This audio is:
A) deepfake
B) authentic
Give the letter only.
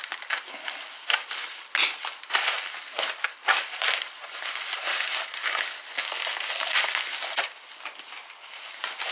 B